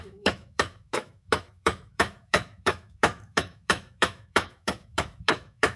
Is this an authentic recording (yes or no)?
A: no